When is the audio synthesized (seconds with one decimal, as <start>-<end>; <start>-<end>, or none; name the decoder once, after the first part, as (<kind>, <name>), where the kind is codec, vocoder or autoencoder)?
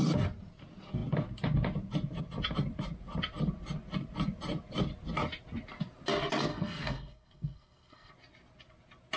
6.5-8.1 (codec, SNAC)